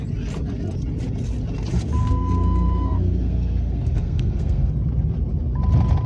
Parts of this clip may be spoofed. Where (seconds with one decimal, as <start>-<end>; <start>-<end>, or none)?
2.0-4.7

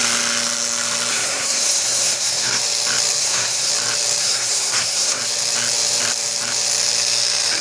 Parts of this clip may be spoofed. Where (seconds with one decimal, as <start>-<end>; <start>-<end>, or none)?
1.1-2.6; 3.2-3.7; 4.2-5.2

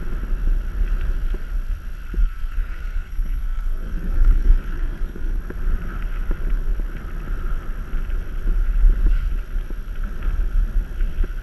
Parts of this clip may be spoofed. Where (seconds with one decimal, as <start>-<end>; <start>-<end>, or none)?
2.2-5.4

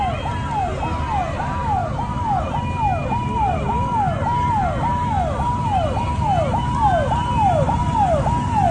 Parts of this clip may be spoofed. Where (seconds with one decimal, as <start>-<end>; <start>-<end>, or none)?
none